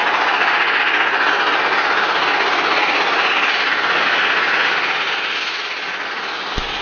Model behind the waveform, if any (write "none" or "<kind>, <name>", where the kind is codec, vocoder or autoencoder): none